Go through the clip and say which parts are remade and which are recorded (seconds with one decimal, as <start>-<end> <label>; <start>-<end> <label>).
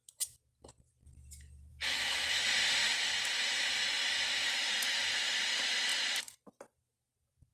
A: 0.0-1.7 recorded; 1.7-2.4 remade; 2.4-7.5 recorded